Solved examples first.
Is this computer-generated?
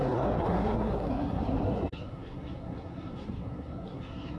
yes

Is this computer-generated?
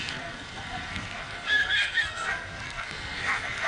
yes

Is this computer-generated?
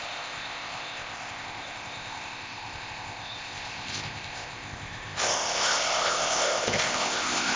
yes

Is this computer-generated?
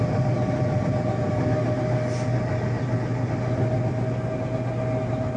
no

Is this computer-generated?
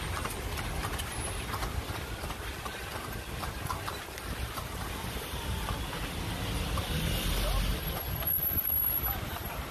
no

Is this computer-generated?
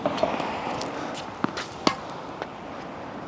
no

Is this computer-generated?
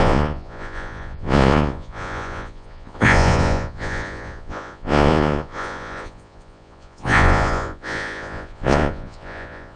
yes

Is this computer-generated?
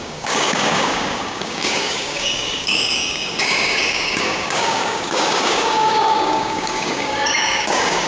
yes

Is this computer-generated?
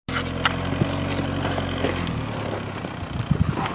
no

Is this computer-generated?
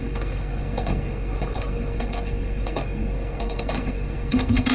yes